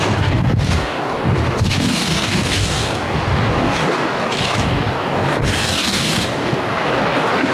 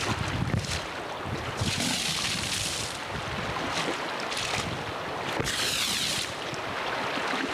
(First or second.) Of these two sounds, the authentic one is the second